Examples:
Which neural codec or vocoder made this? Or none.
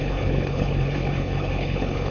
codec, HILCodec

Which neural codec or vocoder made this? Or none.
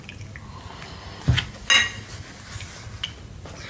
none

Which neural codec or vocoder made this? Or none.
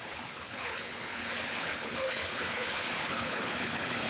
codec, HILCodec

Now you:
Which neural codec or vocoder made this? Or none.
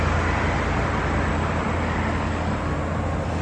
none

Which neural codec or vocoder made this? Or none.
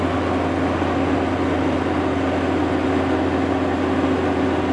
none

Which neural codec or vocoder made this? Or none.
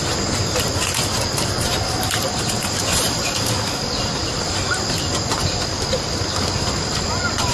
none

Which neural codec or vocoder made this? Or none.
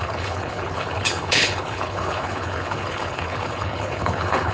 codec, HILCodec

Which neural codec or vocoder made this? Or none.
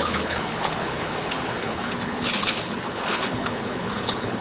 codec, HILCodec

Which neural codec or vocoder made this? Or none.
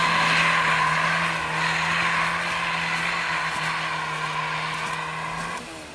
none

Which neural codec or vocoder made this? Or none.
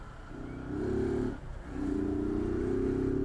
none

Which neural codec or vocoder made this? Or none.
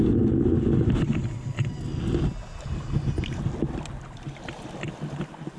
none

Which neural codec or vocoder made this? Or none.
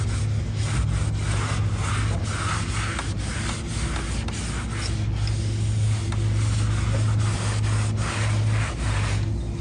none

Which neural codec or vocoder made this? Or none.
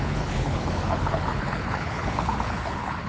codec, HILCodec